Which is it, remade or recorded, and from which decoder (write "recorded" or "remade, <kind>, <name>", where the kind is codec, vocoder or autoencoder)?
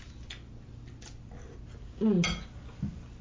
recorded